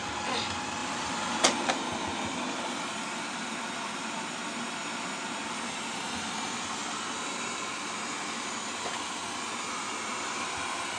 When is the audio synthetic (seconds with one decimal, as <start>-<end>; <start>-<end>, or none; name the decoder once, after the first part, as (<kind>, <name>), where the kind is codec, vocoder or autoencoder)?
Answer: none